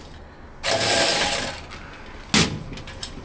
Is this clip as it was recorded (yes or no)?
yes